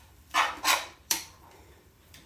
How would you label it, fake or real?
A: fake